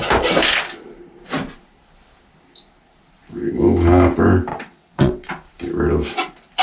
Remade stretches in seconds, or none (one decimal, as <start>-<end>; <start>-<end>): 4.5-5.3

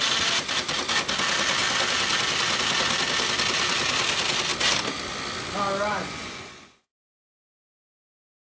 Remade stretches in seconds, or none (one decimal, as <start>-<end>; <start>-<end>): 5.9-7.4

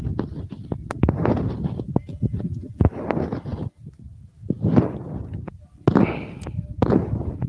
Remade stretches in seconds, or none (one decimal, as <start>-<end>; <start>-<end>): 2.1-2.9

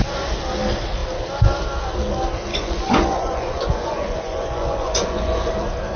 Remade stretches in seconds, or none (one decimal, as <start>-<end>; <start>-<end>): 2.5-5.5